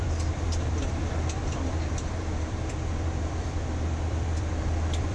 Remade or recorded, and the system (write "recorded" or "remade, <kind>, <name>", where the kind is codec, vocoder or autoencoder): remade, vocoder, BigVGAN v2